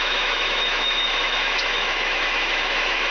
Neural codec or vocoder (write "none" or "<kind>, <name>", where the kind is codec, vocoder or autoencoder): autoencoder, DAC-VAE